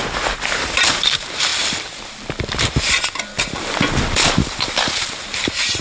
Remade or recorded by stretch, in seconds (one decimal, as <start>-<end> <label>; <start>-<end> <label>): 0.0-1.5 remade; 1.5-4.3 recorded; 4.3-5.8 remade